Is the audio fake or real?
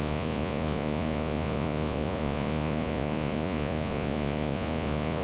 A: fake